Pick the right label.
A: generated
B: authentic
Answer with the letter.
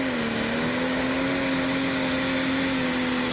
B